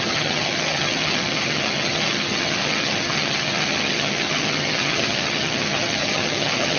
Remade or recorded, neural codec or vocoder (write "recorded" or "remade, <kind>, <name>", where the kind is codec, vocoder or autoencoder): remade, vocoder, HiFi-GAN